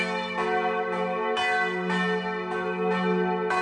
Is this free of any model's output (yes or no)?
yes